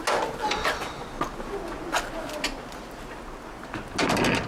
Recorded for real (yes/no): yes